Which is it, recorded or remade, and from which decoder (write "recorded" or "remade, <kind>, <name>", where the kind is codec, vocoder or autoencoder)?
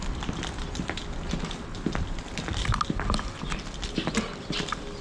recorded